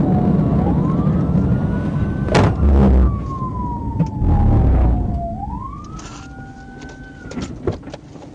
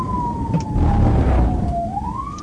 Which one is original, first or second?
first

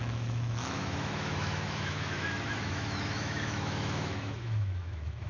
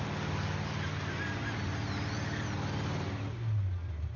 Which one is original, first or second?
second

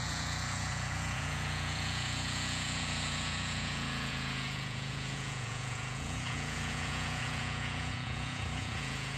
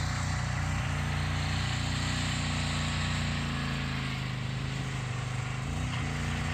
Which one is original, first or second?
second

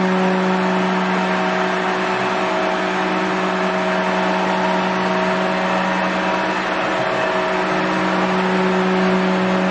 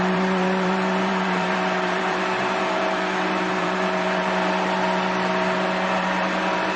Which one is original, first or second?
first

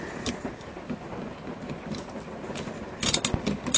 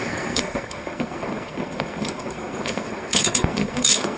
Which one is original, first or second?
first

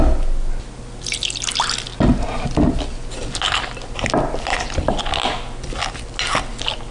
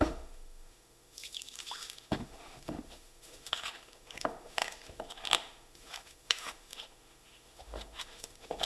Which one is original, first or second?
first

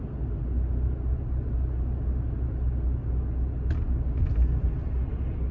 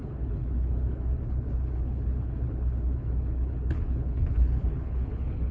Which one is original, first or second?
first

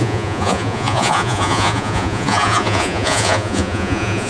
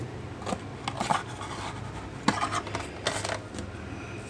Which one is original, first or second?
second